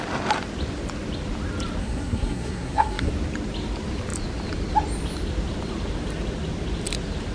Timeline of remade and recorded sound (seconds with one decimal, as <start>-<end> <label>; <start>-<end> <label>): 0.0-1.8 recorded; 1.8-3.1 remade; 3.1-7.3 recorded